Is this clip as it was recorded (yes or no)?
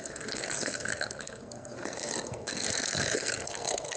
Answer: no